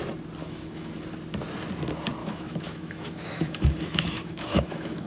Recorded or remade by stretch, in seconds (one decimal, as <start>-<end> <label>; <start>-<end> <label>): 0.0-0.4 recorded; 0.4-0.9 remade; 0.9-2.2 recorded; 2.2-5.1 remade